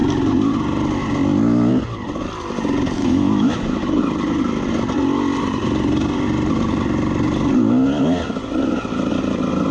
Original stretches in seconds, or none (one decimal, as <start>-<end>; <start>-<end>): 0.0-3.0; 4.0-9.7

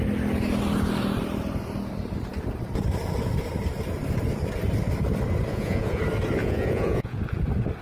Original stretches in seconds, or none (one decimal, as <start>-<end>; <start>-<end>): 0.0-5.5; 6.0-6.4; 7.2-7.8

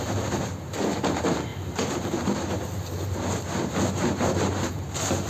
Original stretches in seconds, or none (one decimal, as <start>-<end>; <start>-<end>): none

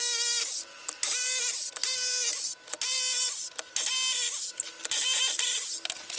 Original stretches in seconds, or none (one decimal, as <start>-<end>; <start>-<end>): 0.0-6.2

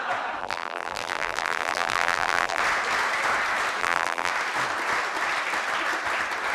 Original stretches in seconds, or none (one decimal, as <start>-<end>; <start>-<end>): 0.0-0.4; 2.6-3.8; 4.3-6.5

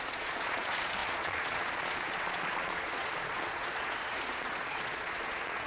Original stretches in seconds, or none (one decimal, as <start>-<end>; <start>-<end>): none

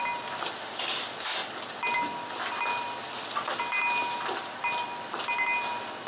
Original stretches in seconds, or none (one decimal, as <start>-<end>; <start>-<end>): 0.0-6.1